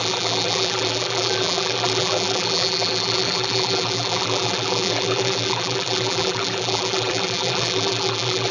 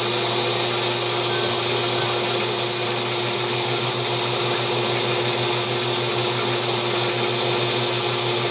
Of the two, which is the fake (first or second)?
first